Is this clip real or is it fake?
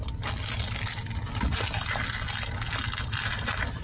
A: real